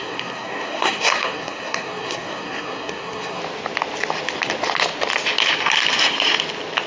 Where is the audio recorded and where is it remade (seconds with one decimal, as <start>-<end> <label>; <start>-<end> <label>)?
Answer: 0.0-3.4 remade; 3.4-6.9 recorded